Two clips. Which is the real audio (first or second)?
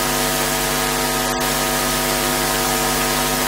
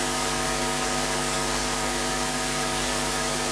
first